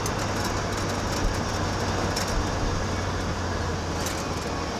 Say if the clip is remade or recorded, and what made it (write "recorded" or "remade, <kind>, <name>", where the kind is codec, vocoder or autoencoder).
recorded